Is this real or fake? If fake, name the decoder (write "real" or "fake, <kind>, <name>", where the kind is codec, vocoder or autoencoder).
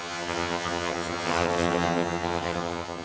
fake, vocoder, HiFi-GAN